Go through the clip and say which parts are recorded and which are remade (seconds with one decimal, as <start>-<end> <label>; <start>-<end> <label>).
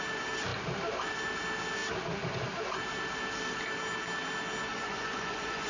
0.0-4.7 recorded; 4.7-5.7 remade